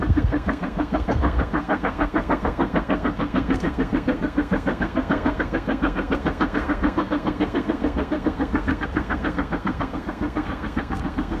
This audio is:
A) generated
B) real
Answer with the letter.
A